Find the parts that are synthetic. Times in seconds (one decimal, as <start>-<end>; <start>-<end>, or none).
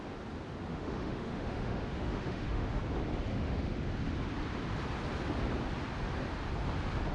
0.7-2.8; 3.3-3.9